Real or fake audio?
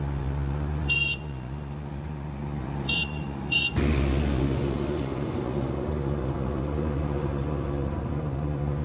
fake